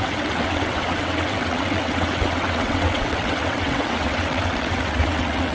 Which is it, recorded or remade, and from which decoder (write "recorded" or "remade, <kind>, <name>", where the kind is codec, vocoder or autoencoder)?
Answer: remade, vocoder, WaveNeXt